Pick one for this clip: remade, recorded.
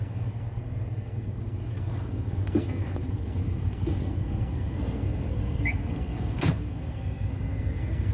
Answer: remade